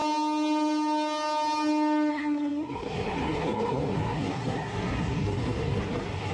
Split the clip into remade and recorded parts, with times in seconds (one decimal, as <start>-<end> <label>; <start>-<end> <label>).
0.0-2.1 recorded; 2.1-6.3 remade